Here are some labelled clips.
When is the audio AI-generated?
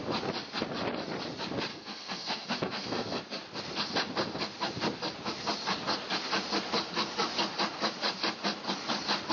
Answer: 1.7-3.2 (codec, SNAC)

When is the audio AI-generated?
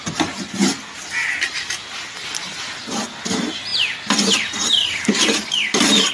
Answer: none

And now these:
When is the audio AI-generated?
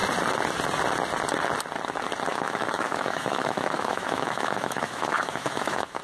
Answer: 2.3-6.0 (autoencoder, DAC-VAE)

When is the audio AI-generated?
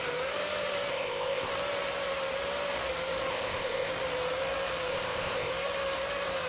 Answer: 0.9-1.5 (codec, ZipCodec); 3.3-3.9; 4.9-5.5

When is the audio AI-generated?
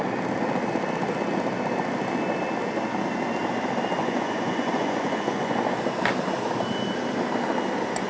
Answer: 4.0-5.6 (vocoder, Vocos)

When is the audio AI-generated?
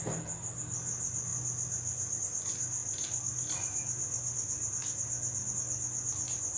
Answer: none